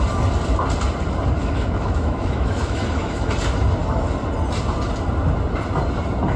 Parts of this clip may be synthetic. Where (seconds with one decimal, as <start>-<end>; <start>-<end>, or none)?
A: 1.4-3.3